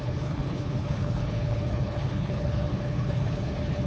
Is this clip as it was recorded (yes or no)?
no